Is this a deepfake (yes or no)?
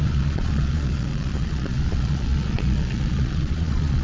yes